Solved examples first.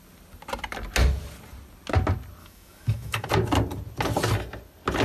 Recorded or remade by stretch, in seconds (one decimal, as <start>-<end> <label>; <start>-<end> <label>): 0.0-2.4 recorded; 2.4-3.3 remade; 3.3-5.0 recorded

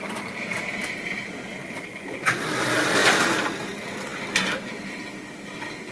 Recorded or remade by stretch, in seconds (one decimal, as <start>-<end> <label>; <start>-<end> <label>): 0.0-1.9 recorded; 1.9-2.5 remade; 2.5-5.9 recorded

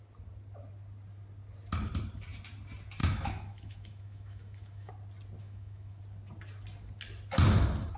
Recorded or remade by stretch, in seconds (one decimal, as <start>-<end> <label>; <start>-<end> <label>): 0.0-3.0 recorded; 3.0-4.9 remade; 4.9-5.4 recorded; 5.4-6.0 remade; 6.0-8.0 recorded

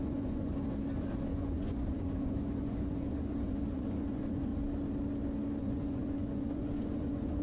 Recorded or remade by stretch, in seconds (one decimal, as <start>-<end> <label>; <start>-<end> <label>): 0.0-0.5 remade; 0.5-1.3 recorded; 1.3-4.5 remade; 4.5-5.6 recorded; 5.6-7.4 remade

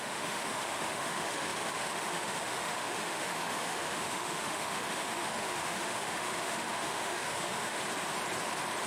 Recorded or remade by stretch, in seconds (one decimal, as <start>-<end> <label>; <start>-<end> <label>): 0.0-7.8 remade; 7.8-8.9 recorded

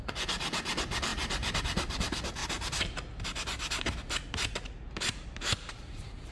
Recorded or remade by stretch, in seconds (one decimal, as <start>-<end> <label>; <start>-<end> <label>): 0.0-2.4 remade; 2.4-4.3 recorded; 4.3-6.3 remade

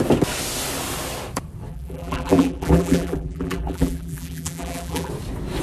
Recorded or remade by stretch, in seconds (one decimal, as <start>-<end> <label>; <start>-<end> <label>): 0.0-1.7 recorded; 1.7-5.1 remade; 5.1-5.6 recorded

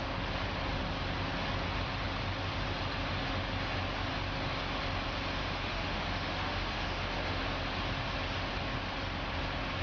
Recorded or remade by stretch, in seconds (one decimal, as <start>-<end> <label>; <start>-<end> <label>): 0.0-5.4 recorded; 5.4-7.4 remade; 7.4-9.8 recorded